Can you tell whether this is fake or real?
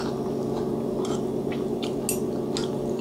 real